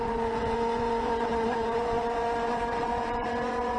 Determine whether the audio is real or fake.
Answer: fake